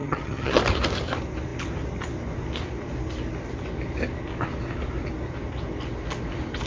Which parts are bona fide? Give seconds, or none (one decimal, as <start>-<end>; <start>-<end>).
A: 0.6-6.7